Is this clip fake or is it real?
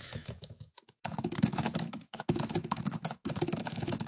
fake